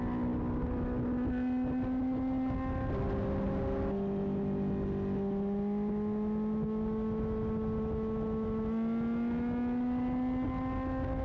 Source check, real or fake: real